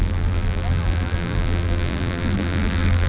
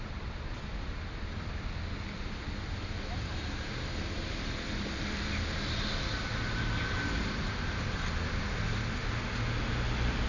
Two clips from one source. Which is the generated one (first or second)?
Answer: first